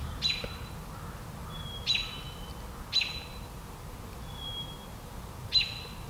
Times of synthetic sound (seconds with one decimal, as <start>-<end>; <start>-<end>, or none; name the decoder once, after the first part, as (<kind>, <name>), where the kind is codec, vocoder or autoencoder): none